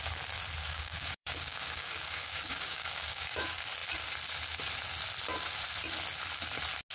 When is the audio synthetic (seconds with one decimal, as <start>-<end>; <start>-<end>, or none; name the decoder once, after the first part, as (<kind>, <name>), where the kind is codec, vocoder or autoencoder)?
0.6-3.4 (codec, DAC)